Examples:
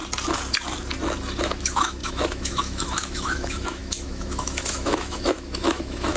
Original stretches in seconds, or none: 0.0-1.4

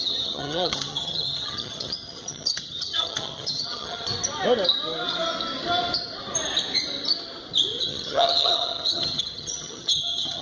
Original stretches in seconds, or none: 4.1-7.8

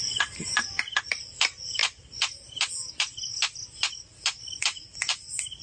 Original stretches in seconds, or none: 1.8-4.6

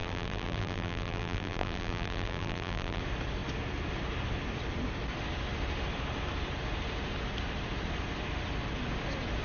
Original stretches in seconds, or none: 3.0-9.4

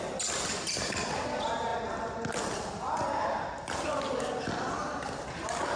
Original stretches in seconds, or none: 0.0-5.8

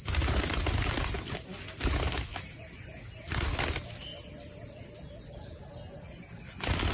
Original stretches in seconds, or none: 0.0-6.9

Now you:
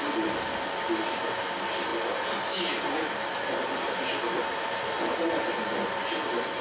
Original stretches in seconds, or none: 0.0-6.6